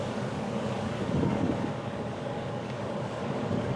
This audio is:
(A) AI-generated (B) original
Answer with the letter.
A